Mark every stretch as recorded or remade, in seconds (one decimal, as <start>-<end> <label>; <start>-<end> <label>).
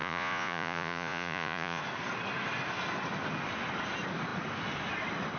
0.0-1.8 remade; 1.8-5.4 recorded